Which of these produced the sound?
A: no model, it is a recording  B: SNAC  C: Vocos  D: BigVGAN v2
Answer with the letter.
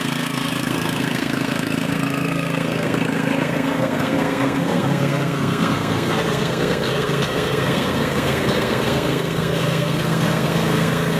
B